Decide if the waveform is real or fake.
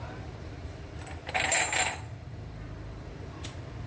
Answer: fake